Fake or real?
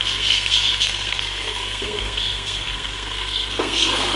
fake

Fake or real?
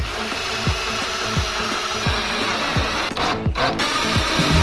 real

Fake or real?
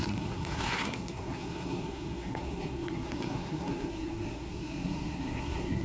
fake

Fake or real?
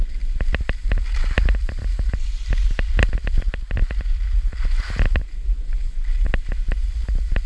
real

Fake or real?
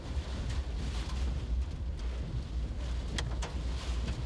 real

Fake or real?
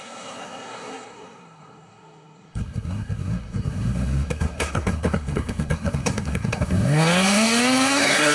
fake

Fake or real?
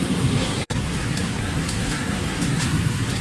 fake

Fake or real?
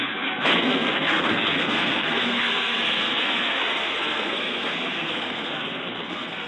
fake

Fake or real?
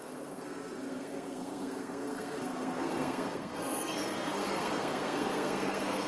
fake